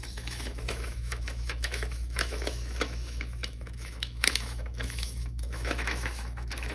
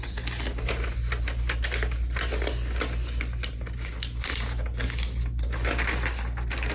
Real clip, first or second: second